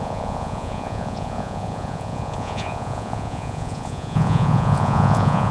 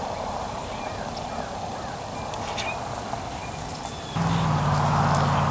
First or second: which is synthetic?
first